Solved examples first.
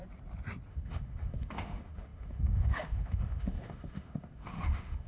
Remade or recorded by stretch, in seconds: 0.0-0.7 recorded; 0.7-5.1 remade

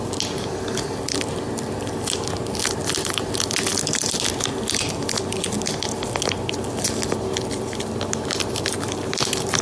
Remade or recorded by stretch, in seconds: 0.0-9.6 recorded

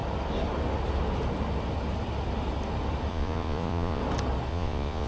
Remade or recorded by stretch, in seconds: 0.0-3.1 recorded; 3.1-4.0 remade; 4.0-4.5 recorded; 4.5-5.1 remade